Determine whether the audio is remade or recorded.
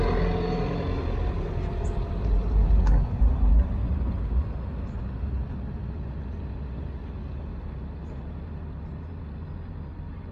recorded